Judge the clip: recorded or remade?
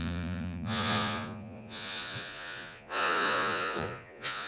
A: remade